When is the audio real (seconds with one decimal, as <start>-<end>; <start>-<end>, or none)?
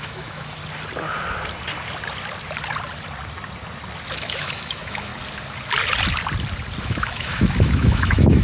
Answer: 0.6-4.1; 5.1-6.8